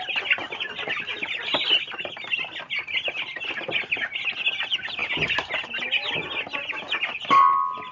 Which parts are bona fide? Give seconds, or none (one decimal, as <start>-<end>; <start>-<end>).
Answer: 0.0-7.9